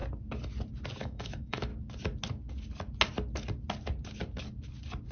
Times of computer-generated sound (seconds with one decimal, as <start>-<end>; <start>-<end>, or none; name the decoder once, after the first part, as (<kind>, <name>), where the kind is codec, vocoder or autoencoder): 1.0-1.7 (autoencoder, DAC-VAE)